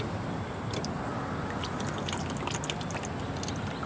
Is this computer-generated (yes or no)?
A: no